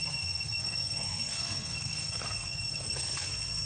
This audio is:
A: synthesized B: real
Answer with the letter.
A